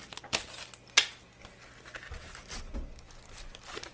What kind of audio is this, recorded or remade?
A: recorded